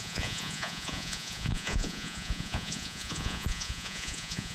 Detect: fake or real fake